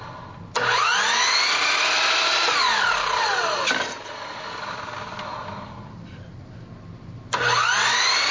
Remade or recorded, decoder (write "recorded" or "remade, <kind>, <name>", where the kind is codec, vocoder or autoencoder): recorded